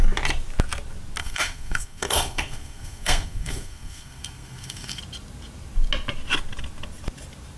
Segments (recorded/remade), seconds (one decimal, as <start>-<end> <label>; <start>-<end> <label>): 0.0-1.2 recorded; 1.2-5.0 remade; 5.0-7.6 recorded